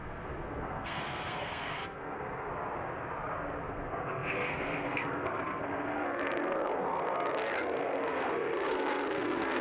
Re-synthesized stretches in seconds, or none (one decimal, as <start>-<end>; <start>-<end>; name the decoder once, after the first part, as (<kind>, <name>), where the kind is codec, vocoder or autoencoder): 0.0-2.5 (codec, SNAC); 3.6-9.6